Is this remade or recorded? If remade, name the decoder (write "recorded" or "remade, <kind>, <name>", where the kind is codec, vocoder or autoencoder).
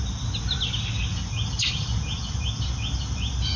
recorded